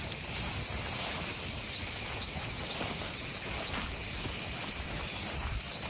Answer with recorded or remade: recorded